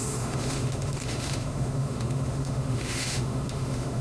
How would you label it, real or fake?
fake